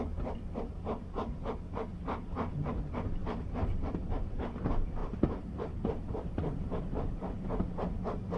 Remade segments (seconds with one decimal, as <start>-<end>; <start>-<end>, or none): 3.2-4.1; 5.0-6.8